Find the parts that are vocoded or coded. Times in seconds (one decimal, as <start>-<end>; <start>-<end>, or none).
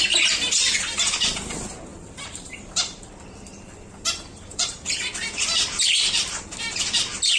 1.9-3.1; 4.3-5.1